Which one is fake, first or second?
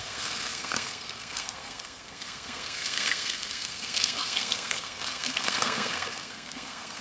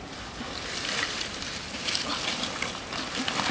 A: first